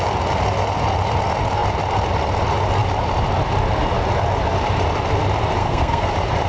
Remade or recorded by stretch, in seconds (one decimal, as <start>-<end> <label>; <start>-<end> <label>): 0.0-5.6 recorded; 5.6-6.1 remade; 6.1-6.5 recorded